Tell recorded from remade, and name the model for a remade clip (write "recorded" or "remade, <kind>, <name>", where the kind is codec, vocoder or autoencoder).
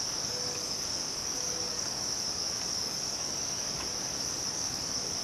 remade, codec, DAC